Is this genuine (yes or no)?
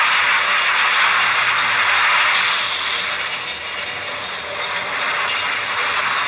yes